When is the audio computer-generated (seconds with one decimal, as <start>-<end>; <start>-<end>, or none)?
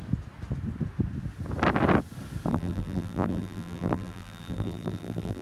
2.5-5.4